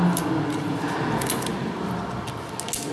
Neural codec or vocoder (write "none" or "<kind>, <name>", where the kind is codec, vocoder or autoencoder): none